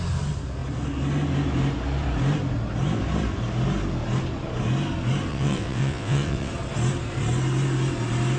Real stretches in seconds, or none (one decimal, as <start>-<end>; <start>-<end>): 0.0-5.3; 6.5-8.4